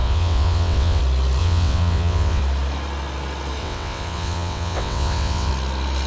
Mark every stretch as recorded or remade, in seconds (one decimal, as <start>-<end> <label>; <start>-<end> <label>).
0.0-1.0 remade; 1.0-1.4 recorded; 1.4-2.4 remade; 2.4-3.6 recorded; 3.6-5.5 remade; 5.5-6.1 recorded